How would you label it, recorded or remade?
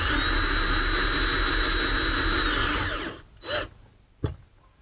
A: recorded